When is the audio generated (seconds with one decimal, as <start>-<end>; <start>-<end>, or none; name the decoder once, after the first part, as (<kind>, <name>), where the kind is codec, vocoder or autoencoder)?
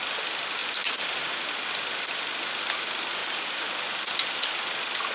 0.6-1.5 (vocoder, BigVGAN v2); 3.2-3.7